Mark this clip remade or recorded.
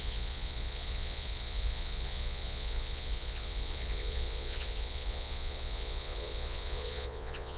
remade